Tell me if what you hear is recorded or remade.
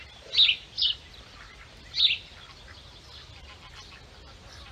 recorded